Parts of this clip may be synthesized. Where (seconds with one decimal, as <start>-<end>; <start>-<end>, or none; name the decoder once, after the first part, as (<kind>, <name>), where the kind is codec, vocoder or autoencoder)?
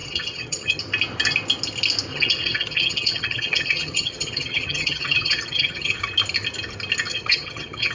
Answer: 0.0-0.8 (vocoder, HiFi-GAN); 2.1-5.9; 7.1-7.9